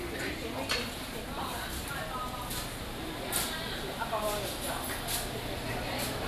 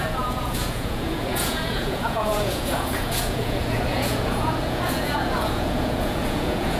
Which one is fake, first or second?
second